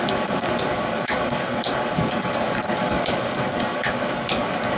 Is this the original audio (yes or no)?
no